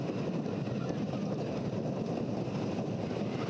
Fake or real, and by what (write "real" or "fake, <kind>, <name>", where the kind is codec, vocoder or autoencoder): fake, vocoder, BigVGAN v2